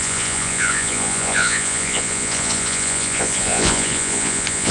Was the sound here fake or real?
fake